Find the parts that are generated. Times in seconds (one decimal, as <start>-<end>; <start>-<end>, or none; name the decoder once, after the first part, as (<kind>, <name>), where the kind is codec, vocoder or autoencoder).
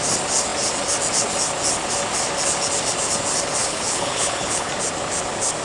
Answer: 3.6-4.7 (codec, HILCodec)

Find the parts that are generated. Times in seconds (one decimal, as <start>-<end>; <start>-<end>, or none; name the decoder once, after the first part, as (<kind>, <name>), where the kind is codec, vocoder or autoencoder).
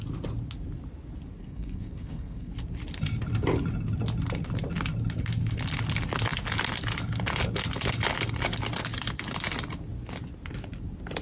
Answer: 1.4-2.5 (codec, SNAC)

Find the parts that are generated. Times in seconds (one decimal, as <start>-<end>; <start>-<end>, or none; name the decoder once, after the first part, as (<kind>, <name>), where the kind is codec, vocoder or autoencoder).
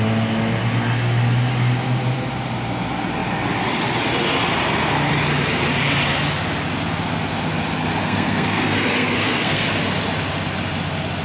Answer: 8.0-9.7 (codec, SNAC)